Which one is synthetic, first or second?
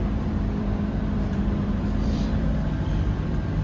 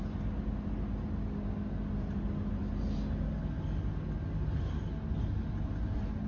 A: first